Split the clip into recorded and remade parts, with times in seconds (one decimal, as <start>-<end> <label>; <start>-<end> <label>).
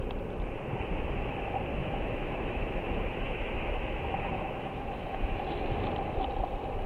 0.0-1.8 recorded; 1.8-5.4 remade; 5.4-6.9 recorded